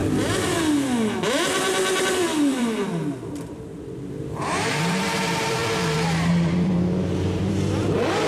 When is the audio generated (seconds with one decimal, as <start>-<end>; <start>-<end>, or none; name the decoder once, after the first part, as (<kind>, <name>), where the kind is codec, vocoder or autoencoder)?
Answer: 2.1-2.9 (vocoder, BigVGAN v2); 4.4-8.3